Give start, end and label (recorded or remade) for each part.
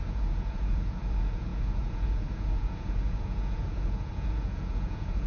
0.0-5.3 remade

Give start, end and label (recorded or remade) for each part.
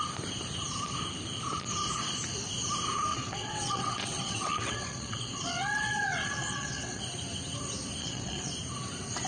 0.0-3.1 recorded; 3.1-7.0 remade; 7.0-8.0 recorded; 8.0-8.5 remade; 8.5-9.3 recorded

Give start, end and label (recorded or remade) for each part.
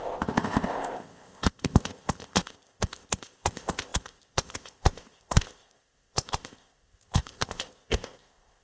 0.0-8.6 remade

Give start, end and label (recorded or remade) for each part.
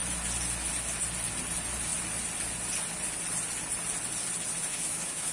0.0-4.7 recorded; 4.7-5.3 remade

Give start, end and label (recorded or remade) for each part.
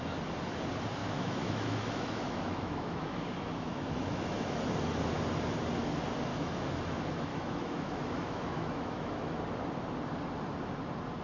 0.0-1.0 recorded; 1.0-4.6 remade; 4.6-6.3 recorded; 6.3-6.8 remade; 6.8-7.3 recorded; 7.3-9.4 remade; 9.4-11.2 recorded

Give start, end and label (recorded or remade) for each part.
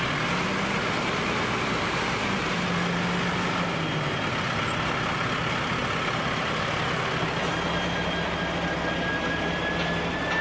0.0-10.4 recorded